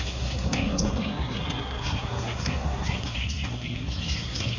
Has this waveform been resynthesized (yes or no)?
yes